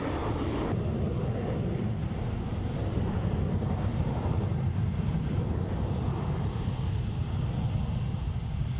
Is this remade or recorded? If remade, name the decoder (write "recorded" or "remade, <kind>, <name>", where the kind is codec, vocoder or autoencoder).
recorded